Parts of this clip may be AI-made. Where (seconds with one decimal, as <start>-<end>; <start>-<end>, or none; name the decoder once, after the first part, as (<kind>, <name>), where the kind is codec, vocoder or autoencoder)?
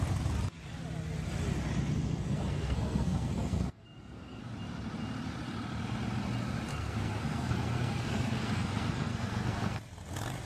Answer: 2.0-4.4 (codec, SNAC); 6.7-9.8